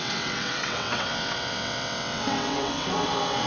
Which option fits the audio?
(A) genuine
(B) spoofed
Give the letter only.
B